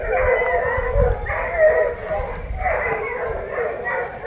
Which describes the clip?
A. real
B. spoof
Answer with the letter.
A